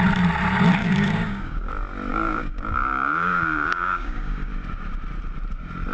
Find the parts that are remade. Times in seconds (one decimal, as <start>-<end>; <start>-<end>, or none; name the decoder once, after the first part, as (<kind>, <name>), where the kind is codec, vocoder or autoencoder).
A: 0.8-1.7 (codec, DAC); 2.1-4.5